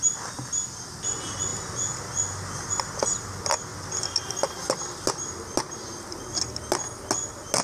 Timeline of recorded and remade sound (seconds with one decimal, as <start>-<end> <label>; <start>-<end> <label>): 0.0-7.6 recorded